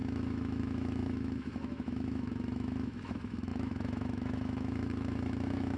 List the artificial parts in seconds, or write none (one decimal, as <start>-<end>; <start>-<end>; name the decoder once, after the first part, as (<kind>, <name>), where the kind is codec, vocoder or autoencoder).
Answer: 0.0-5.8 (autoencoder, DAC-VAE)